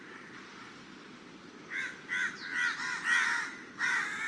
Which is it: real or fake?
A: fake